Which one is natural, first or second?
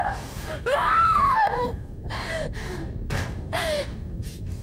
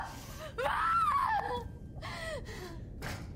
second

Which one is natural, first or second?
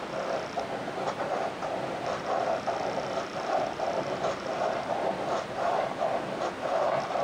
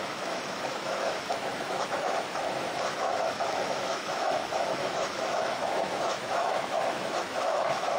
first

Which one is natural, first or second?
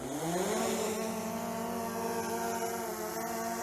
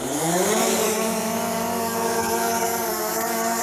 first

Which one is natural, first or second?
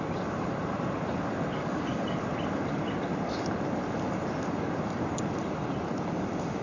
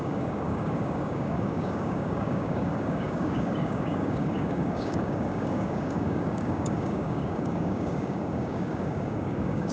first